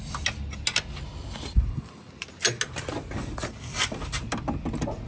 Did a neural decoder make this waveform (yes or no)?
no